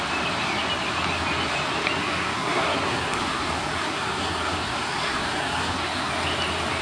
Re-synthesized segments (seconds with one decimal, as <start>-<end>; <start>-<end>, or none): 2.0-6.1